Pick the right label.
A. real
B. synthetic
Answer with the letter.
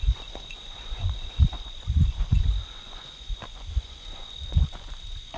B